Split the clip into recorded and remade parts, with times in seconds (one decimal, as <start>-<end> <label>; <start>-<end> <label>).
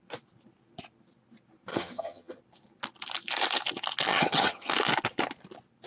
0.0-1.7 recorded; 1.7-2.4 remade; 2.4-4.1 recorded; 4.1-4.7 remade; 4.7-5.9 recorded